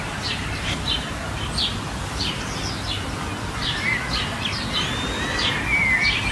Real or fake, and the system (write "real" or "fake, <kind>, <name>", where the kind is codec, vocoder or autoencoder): real